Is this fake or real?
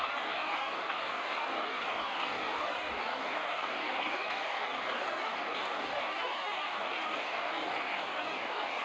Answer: fake